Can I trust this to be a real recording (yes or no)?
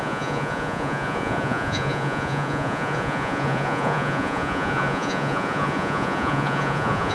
no